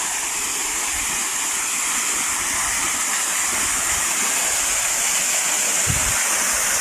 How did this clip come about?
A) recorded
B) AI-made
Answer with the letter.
A